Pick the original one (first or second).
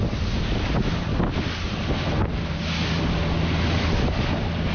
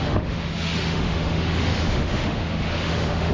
first